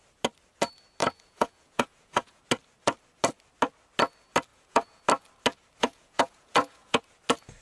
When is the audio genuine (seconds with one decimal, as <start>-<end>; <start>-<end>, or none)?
0.0-1.0; 2.4-4.5; 5.0-5.8; 7.0-7.6